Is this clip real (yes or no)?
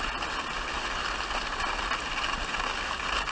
yes